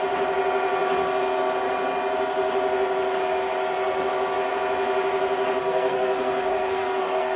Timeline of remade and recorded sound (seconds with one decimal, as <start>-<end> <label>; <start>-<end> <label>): 0.0-5.6 recorded; 5.6-7.4 remade